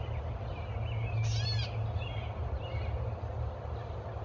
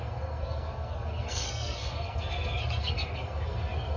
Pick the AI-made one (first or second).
second